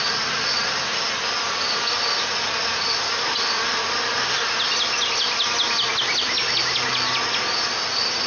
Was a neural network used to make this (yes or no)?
no